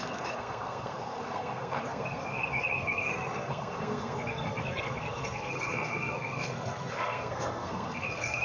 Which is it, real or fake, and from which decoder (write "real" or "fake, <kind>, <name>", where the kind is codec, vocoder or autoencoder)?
fake, codec, SNAC